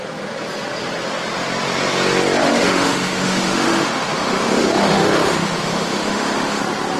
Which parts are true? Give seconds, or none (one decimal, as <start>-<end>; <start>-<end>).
0.0-2.4; 6.6-7.0